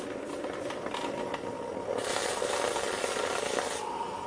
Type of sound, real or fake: real